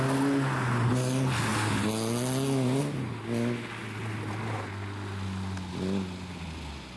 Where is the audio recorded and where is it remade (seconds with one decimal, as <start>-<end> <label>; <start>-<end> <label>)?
0.0-7.0 recorded